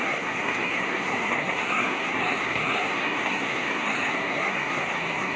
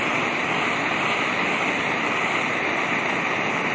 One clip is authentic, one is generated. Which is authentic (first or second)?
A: second